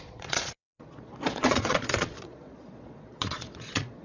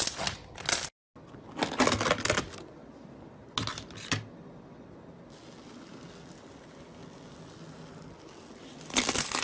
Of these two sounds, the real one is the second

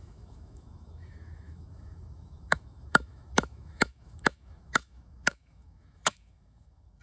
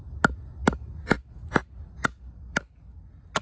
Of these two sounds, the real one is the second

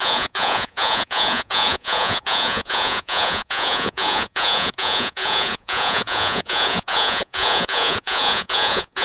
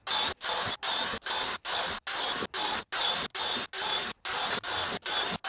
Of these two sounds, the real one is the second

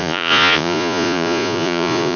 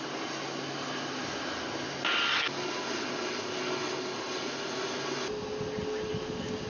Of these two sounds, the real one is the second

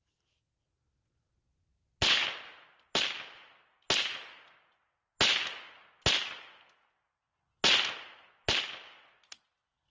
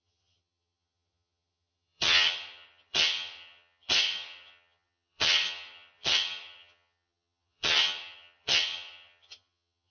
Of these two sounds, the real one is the first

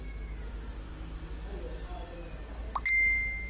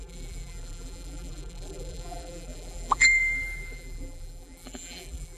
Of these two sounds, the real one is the first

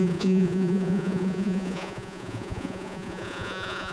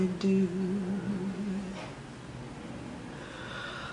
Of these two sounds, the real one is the second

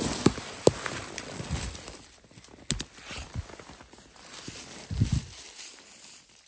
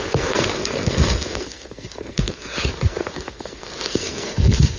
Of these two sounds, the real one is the first